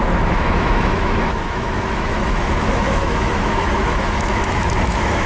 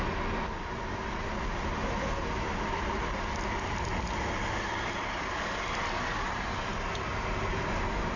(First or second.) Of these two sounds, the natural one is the second